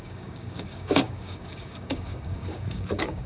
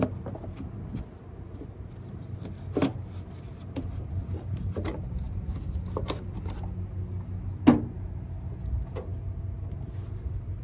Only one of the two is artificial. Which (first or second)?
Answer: first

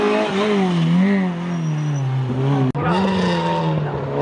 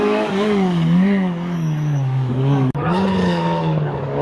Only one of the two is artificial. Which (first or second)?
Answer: second